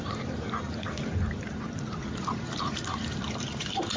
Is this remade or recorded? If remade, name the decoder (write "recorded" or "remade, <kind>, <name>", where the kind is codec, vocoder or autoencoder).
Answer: remade, vocoder, BigVGAN v2